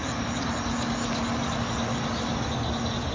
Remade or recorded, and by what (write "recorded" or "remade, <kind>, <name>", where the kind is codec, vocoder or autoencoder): recorded